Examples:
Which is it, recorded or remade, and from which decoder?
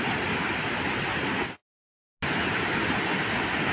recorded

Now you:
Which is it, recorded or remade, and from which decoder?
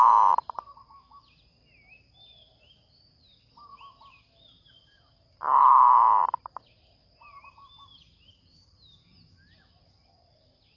recorded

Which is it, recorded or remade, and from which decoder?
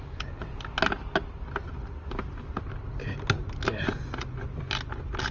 recorded